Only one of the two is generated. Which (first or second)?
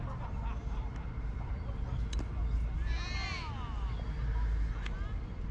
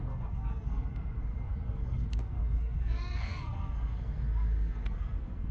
second